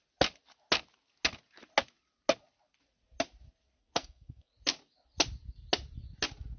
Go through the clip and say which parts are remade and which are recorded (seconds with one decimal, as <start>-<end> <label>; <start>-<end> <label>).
0.0-3.8 recorded; 3.8-4.5 remade; 4.5-6.6 recorded